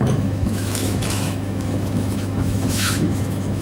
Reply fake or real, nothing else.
fake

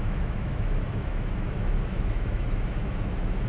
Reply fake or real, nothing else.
fake